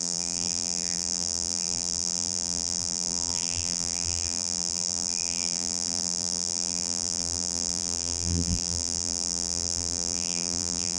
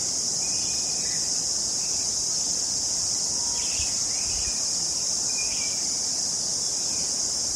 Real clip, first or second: second